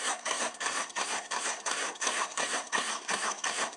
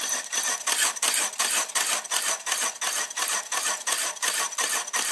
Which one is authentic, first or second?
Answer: second